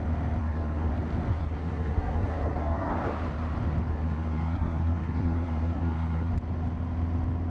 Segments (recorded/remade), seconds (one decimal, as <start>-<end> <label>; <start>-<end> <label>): 0.0-0.4 recorded; 0.4-0.9 remade; 0.9-1.3 recorded; 1.3-2.9 remade; 2.9-3.9 recorded; 3.9-6.3 remade; 6.3-7.5 recorded